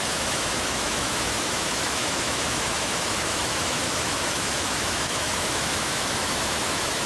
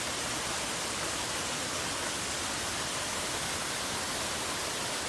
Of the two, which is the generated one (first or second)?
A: first